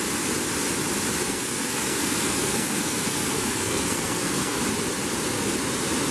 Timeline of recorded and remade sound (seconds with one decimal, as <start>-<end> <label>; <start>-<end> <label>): 0.0-1.2 recorded; 1.2-4.6 remade; 4.6-6.1 recorded